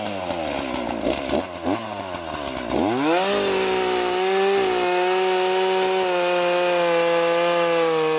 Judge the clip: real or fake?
real